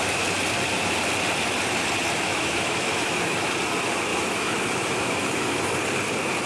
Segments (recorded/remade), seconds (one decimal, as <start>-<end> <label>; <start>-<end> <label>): 0.0-2.3 recorded; 2.3-3.5 remade; 3.5-4.1 recorded; 4.1-5.7 remade; 5.7-6.5 recorded